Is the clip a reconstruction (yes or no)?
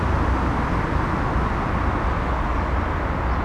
no